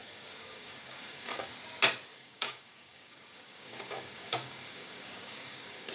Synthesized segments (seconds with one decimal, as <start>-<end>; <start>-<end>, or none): 0.0-1.5; 2.1-5.9